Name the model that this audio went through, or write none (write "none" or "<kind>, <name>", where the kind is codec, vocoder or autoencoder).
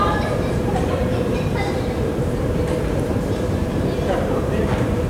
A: vocoder, BigVGAN v2